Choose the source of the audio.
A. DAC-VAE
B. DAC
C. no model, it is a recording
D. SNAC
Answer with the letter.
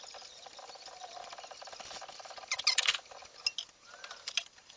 C